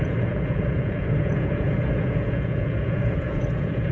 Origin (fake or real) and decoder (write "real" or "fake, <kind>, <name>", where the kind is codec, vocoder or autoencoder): fake, vocoder, Vocos